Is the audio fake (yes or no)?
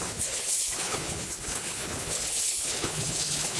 yes